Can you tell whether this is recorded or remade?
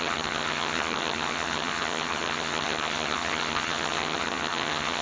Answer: remade